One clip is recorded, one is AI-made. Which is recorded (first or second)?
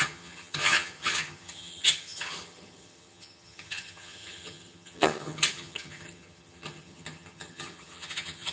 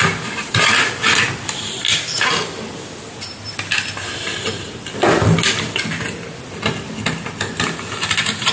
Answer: second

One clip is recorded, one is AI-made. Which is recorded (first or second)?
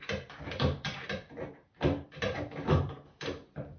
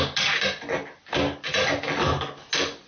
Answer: second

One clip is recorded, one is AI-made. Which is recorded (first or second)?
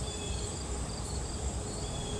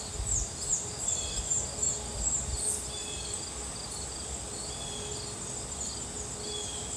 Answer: second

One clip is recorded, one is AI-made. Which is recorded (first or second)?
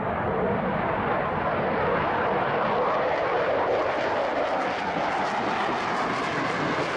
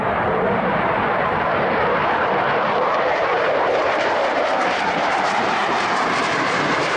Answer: first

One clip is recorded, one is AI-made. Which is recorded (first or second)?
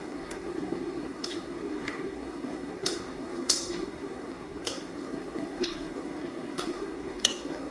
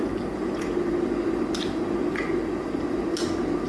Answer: second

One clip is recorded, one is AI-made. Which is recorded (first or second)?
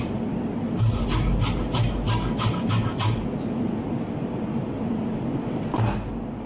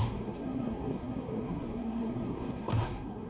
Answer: first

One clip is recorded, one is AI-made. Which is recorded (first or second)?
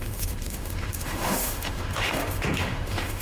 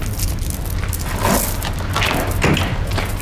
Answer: second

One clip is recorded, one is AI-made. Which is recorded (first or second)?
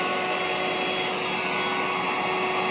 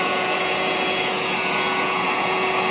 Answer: first